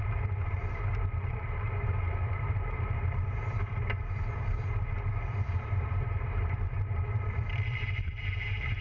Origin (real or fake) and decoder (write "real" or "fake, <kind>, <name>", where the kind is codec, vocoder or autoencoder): fake, vocoder, BigVGAN v2